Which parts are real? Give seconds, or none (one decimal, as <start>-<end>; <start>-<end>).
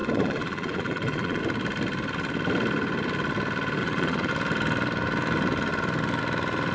1.4-3.8; 4.3-6.7